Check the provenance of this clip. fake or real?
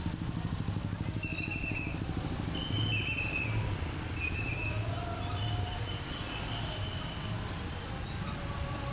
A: real